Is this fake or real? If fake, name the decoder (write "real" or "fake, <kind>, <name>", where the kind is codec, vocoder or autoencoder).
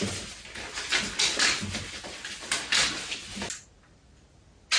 real